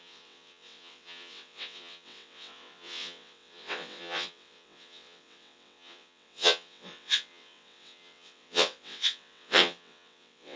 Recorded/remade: remade